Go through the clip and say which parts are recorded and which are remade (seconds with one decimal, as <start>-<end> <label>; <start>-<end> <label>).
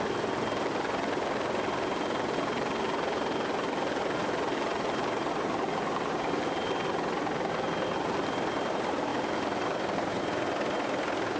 0.0-9.1 recorded; 9.1-10.2 remade; 10.2-11.4 recorded